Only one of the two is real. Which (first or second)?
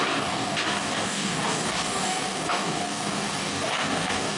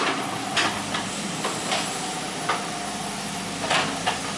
second